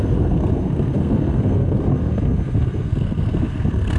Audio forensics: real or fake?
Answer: fake